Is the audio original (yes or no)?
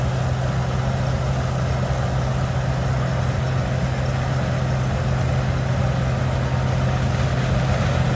yes